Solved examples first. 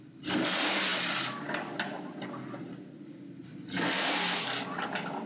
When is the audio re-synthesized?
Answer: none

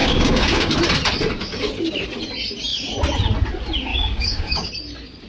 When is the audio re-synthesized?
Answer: 0.0-0.7; 3.9-4.7